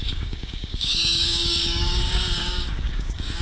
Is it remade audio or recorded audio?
remade